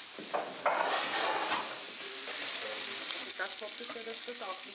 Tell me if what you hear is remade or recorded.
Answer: recorded